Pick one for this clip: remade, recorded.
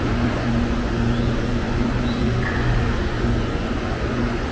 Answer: remade